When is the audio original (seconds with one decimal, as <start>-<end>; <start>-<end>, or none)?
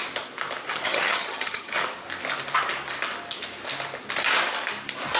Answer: 0.0-0.7; 1.8-5.2